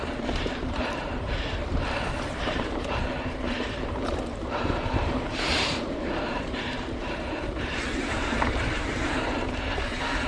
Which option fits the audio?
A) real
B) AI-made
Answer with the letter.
B